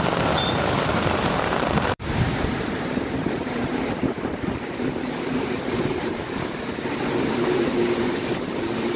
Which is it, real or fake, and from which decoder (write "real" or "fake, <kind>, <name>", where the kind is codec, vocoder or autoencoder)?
fake, vocoder, BigVGAN v2